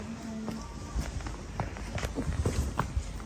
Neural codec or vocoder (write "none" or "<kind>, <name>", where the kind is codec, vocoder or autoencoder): none